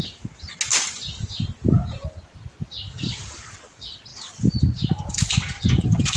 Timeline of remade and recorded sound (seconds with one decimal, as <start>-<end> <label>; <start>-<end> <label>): 0.0-6.2 recorded